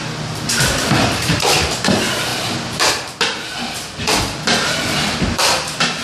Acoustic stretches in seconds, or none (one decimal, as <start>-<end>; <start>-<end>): 0.0-6.0